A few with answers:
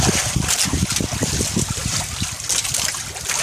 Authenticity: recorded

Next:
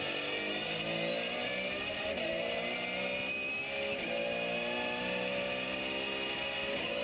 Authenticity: recorded